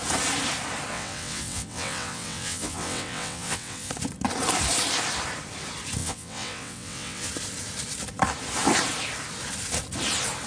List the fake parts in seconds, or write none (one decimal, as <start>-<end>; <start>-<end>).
0.9-3.9; 6.0-7.3